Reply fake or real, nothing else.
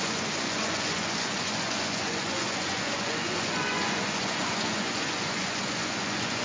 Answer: fake